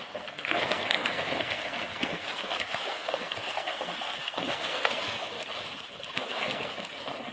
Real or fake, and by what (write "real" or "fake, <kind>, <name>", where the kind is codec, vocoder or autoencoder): fake, codec, SNAC